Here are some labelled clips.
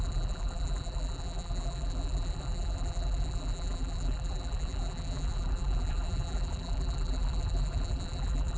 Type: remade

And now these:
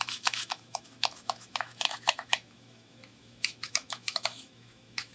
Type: remade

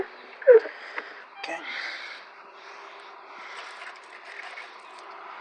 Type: recorded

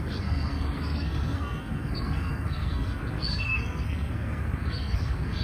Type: remade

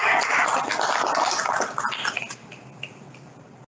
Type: recorded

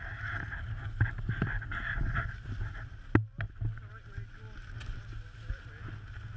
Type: recorded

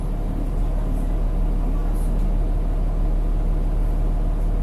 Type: recorded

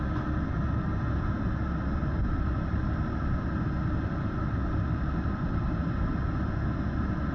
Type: recorded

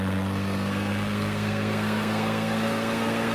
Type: remade